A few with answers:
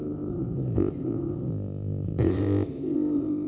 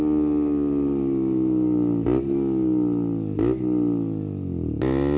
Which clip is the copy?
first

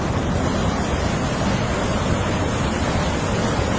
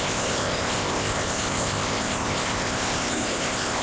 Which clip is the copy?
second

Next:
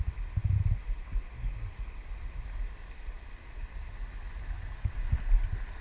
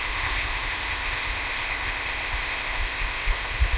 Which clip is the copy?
second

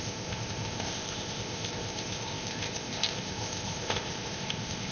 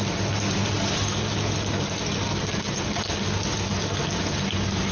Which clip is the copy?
first